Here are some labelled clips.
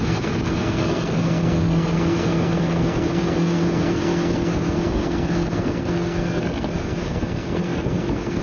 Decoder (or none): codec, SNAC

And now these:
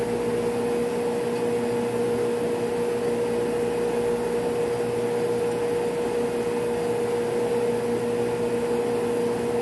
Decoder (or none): none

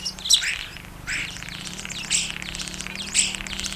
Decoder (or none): none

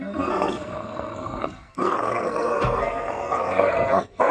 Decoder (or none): codec, SNAC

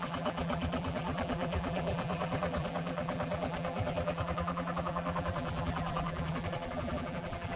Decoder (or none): vocoder, BigVGAN v2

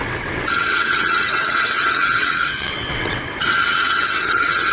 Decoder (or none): vocoder, WaveNeXt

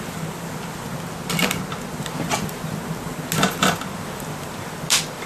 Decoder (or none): none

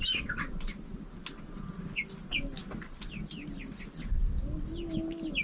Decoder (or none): none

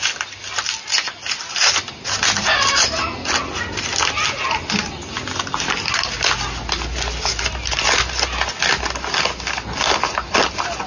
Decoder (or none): none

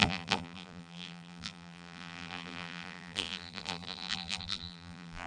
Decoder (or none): vocoder, BigVGAN v2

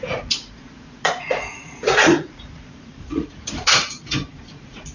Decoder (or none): vocoder, Vocos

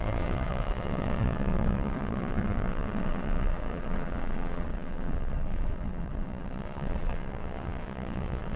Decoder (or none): vocoder, WaveNeXt